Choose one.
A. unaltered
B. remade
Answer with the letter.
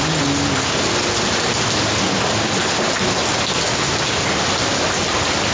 A